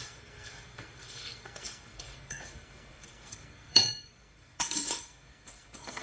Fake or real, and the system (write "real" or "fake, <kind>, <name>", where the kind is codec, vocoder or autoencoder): fake, codec, SNAC